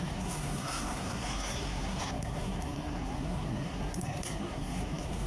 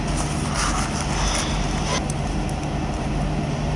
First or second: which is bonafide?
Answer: second